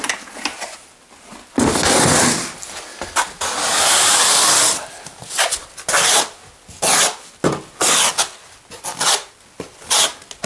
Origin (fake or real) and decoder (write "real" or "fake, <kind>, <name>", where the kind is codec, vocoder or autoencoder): real